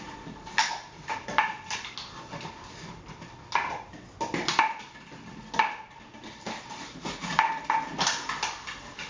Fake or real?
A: real